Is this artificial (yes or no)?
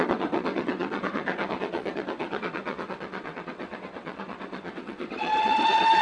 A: yes